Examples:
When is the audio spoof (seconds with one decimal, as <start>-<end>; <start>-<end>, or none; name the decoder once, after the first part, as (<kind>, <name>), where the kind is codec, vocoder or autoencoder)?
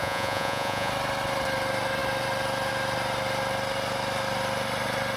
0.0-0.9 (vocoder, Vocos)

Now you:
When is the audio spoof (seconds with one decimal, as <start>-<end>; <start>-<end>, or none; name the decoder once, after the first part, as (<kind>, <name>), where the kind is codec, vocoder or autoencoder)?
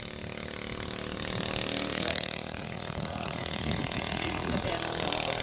1.9-4.7 (vocoder, Vocos)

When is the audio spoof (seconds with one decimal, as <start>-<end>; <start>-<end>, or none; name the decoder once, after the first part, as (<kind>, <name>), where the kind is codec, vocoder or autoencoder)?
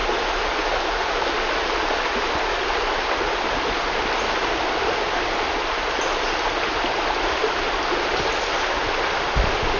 none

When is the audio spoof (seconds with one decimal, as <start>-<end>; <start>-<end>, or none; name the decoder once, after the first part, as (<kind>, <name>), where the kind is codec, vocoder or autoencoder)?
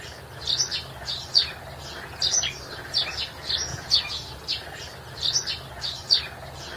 3.7-4.4 (vocoder, Vocos)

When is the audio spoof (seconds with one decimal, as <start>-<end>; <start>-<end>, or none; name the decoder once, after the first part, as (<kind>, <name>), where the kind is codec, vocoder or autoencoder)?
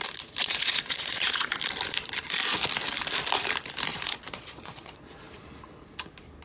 0.4-1.5 (vocoder, Vocos); 3.9-5.3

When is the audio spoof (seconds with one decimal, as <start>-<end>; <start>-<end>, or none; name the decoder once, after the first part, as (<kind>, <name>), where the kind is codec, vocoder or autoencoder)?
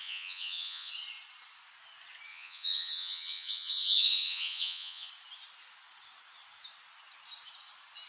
0.0-0.9 (vocoder, Vocos); 2.3-5.1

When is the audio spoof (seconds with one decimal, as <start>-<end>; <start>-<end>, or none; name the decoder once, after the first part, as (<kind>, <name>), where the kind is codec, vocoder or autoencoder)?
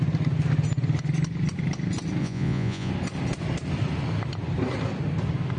2.2-2.9 (vocoder, Vocos)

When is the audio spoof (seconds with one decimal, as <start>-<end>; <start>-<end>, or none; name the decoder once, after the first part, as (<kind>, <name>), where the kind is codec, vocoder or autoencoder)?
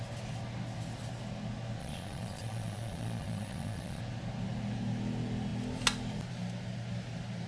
1.8-4.0 (vocoder, Vocos)